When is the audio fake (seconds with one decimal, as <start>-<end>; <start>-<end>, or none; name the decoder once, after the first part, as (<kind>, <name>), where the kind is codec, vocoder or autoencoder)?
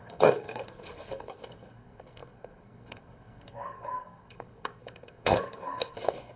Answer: 0.0-6.4 (codec, SNAC)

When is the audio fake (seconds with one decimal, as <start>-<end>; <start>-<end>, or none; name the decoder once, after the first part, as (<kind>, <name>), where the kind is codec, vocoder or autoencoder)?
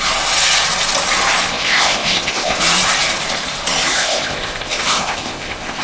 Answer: 1.5-2.6 (codec, ZipCodec); 3.9-5.8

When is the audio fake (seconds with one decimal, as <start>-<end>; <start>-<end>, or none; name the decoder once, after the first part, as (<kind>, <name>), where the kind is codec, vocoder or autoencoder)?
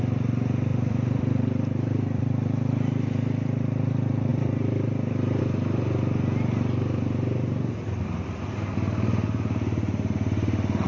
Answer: 0.7-2.2 (vocoder, BigVGAN v2); 4.3-5.4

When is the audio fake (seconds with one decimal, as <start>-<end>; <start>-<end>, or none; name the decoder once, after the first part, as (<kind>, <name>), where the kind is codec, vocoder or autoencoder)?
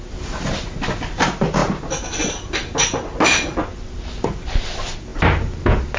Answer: none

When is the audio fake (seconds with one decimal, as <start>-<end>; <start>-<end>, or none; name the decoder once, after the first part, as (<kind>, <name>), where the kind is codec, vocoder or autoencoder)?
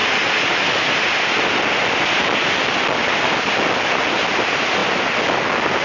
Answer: none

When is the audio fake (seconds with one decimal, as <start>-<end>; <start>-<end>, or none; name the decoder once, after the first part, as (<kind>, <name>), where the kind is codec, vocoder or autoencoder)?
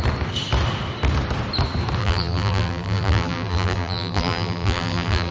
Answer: 2.0-5.3 (vocoder, BigVGAN v2)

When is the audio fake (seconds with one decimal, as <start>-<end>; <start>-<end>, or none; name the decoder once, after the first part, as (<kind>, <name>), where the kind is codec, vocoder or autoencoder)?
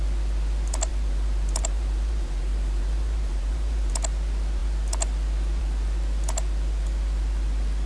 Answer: 0.9-3.9 (vocoder, BigVGAN v2)